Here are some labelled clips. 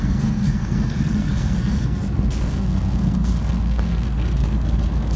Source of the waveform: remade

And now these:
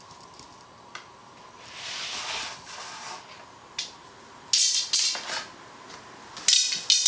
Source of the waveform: recorded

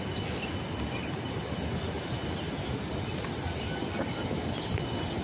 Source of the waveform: recorded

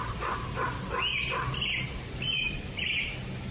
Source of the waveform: recorded